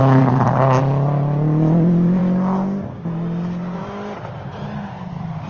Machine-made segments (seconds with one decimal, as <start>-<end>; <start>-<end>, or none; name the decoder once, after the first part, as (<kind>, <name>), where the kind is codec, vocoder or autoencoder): 0.0-0.8 (vocoder, BigVGAN v2)